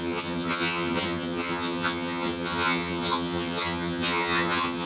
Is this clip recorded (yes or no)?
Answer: no